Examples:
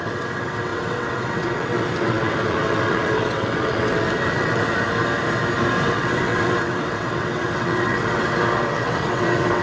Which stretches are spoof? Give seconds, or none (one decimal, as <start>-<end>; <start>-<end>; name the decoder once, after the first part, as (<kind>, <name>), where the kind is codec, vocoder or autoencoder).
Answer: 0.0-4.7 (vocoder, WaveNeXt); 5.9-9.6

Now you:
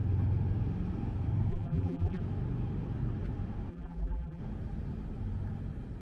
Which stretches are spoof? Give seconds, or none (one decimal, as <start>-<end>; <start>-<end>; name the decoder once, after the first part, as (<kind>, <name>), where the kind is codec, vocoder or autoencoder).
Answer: 1.5-2.2 (vocoder, BigVGAN v2); 3.7-4.4

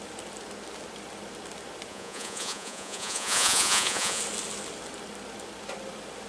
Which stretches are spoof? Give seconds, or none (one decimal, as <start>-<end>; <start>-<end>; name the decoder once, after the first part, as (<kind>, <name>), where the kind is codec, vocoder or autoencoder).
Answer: 1.9-4.2 (vocoder, Vocos)

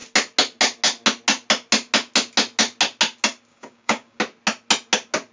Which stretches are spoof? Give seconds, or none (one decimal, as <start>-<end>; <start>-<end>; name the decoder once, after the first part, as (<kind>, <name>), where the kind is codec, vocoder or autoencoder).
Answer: 3.5-4.2 (codec, DAC)

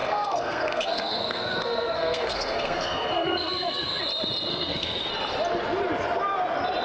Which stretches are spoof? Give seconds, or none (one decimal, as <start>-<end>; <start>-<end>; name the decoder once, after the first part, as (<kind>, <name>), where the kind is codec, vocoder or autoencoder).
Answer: 0.0-4.0 (codec, SNAC); 4.5-5.1